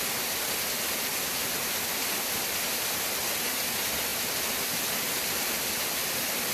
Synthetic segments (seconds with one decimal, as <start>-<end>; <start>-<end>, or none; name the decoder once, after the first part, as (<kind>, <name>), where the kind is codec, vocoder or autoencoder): none